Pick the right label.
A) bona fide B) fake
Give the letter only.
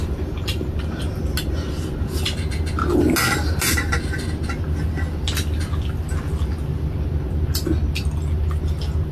A